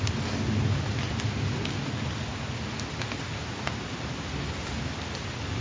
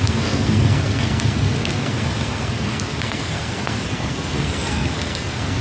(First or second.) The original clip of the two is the first